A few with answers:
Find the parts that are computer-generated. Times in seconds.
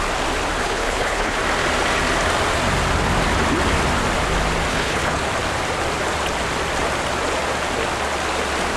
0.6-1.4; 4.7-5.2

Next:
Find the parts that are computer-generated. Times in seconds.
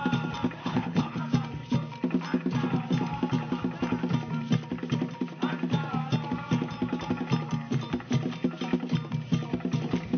0.6-1.2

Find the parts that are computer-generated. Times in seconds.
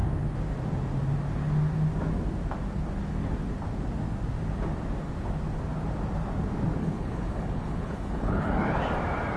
6.8-8.8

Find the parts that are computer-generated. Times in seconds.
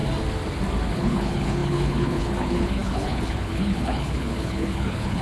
0.9-5.2